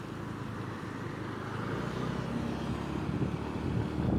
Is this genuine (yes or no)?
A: yes